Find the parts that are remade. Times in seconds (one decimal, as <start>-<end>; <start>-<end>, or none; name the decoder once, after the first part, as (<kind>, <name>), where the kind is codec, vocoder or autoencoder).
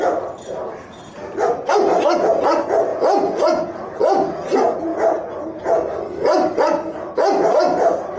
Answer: 2.9-4.0 (vocoder, Vocos)